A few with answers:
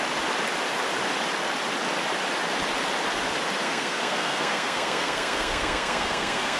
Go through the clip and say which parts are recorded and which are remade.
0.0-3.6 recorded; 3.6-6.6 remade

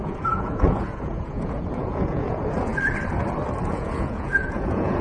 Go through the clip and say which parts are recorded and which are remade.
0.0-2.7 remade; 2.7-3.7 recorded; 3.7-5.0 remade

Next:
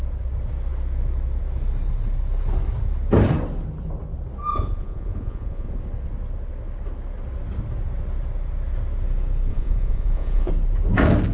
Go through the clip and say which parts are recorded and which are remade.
0.0-4.5 recorded; 4.5-5.7 remade; 5.7-9.5 recorded; 9.5-10.5 remade; 10.5-11.3 recorded

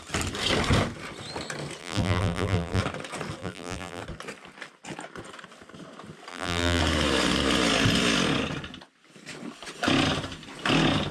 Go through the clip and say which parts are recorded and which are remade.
0.0-1.8 recorded; 1.8-2.8 remade; 2.8-3.4 recorded; 3.4-4.0 remade; 4.0-6.3 recorded; 6.3-6.8 remade; 6.8-11.1 recorded

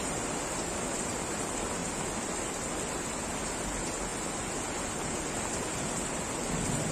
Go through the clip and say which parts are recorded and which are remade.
0.0-6.9 recorded

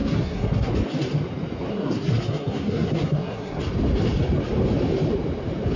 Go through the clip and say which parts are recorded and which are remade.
0.0-0.7 remade; 0.7-1.7 recorded; 1.7-3.6 remade; 3.6-5.8 recorded

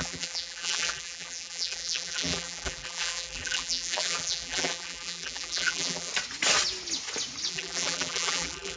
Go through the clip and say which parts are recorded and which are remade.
0.0-6.1 remade; 6.1-7.5 recorded; 7.5-8.8 remade

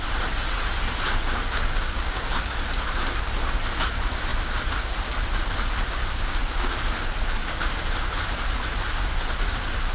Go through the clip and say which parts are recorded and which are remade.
0.0-1.4 recorded; 1.4-2.6 remade; 2.6-6.0 recorded; 6.0-6.9 remade; 6.9-9.9 recorded